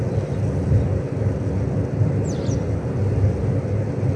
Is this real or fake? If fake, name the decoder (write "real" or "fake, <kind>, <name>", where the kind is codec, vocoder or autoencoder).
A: real